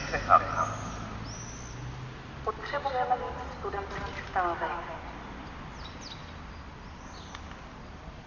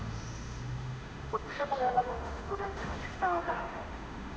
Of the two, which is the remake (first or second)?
second